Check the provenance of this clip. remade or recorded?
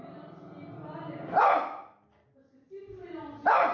recorded